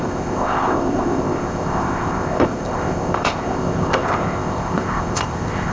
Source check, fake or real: fake